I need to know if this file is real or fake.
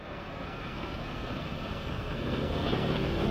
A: fake